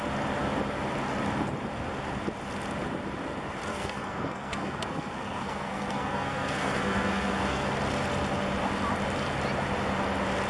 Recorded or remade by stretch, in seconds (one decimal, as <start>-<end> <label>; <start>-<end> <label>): 0.0-3.7 recorded; 3.7-7.7 remade; 7.7-10.5 recorded